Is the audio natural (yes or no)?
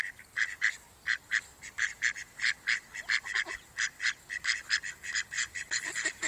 yes